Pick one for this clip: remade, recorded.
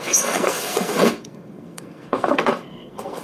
remade